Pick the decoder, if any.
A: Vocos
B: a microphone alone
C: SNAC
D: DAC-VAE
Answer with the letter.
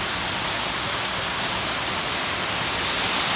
B